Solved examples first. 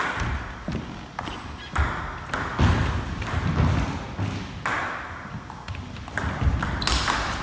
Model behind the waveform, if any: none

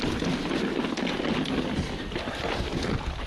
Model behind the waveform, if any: none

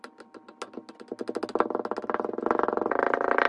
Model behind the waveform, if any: none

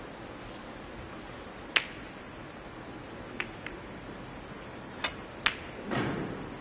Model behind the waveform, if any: none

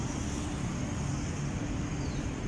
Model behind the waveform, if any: none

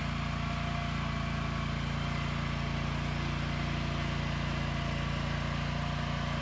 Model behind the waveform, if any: none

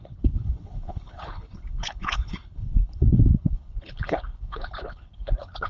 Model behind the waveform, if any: codec, HILCodec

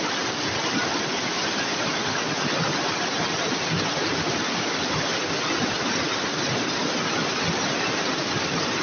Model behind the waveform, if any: none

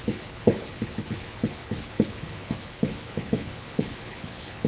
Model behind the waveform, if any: codec, HILCodec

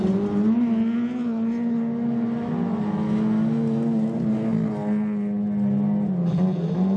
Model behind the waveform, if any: none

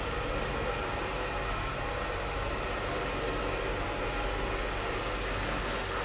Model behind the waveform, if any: none